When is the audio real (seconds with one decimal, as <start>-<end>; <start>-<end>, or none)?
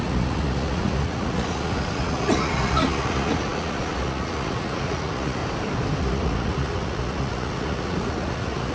5.4-6.0